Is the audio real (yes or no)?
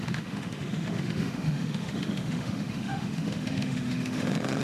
no